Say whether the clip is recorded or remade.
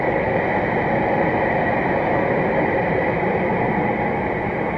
recorded